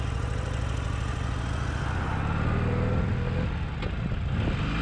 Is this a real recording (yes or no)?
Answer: yes